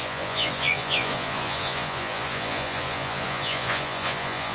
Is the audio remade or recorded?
remade